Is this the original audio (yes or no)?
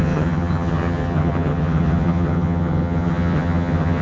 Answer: no